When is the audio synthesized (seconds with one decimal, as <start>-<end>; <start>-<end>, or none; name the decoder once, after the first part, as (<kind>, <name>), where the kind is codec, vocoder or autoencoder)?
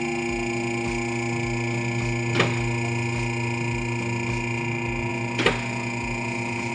none